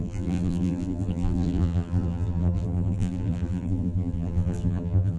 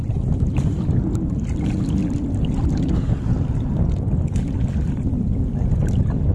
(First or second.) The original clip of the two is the second